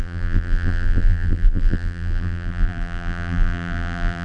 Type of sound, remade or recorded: remade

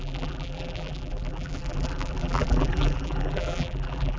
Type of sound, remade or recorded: remade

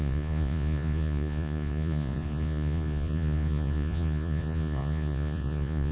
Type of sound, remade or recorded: remade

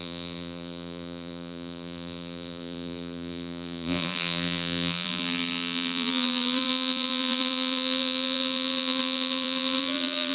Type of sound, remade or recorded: remade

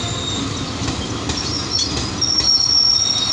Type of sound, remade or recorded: recorded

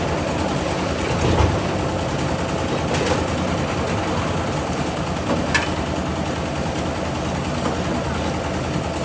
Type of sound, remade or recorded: recorded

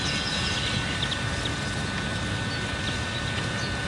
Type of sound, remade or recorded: recorded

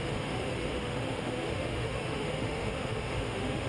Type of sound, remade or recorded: remade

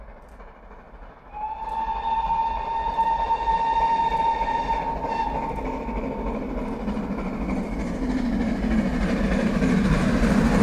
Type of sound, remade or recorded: recorded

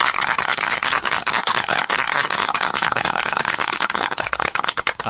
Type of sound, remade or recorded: remade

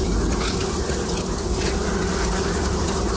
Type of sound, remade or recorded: recorded